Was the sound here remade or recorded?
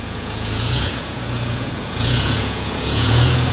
remade